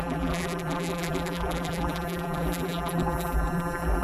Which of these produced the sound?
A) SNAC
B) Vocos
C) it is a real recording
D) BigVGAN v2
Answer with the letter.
D